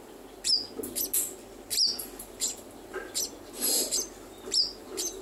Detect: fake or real real